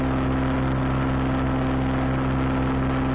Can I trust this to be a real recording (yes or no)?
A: yes